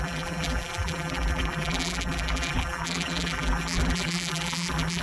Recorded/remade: remade